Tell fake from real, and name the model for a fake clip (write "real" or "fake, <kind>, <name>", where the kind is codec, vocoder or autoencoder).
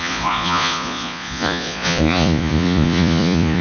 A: fake, vocoder, Vocos